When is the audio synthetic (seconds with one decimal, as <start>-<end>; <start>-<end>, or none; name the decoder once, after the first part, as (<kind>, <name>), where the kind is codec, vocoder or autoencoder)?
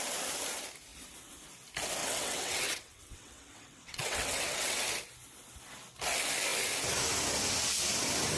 2.0-4.8 (vocoder, WaveNeXt)